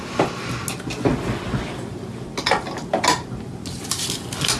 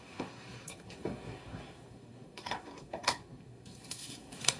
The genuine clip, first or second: first